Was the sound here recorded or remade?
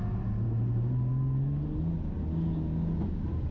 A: recorded